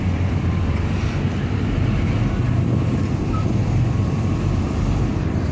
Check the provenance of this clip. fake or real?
real